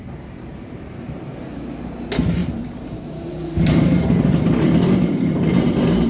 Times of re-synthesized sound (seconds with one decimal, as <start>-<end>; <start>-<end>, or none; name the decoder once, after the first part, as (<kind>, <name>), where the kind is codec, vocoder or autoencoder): 0.0-1.4 (vocoder, BigVGAN v2); 2.4-6.1

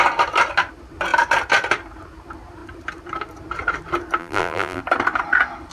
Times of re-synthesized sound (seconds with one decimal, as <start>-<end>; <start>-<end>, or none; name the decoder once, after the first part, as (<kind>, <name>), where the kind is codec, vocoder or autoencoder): 4.2-4.8 (vocoder, BigVGAN v2)

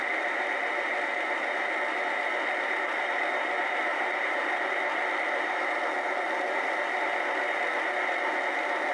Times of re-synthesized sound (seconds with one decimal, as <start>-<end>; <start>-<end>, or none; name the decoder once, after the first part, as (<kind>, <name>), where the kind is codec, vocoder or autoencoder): 3.9-4.7 (vocoder, BigVGAN v2)

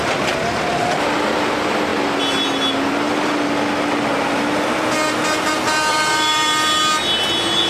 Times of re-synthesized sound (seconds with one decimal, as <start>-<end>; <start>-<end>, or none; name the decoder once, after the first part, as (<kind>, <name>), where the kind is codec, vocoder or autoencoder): 5.9-6.8 (vocoder, BigVGAN v2)